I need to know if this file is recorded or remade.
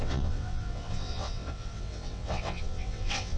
remade